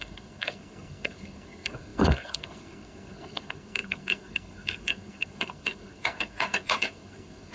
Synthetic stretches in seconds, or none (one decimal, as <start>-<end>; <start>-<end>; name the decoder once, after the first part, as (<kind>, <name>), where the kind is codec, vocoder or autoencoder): 0.0-7.5 (codec, SNAC)